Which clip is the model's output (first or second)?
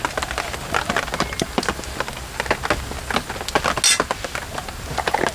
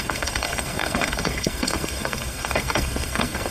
second